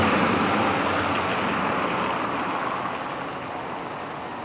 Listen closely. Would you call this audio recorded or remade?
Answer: recorded